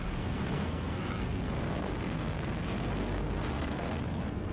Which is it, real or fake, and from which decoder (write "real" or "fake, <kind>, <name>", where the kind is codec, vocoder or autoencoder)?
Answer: fake, codec, SNAC